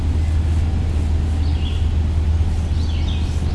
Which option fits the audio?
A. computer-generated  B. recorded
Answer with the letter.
B